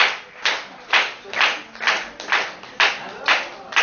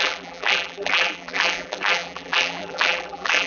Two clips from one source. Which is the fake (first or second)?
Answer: second